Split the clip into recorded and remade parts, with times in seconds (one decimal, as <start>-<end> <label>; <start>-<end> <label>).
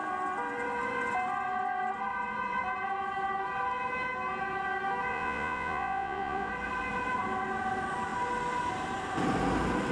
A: 0.0-5.1 recorded; 5.1-6.5 remade; 6.5-9.9 recorded